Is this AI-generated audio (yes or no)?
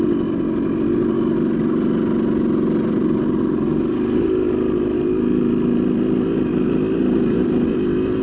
no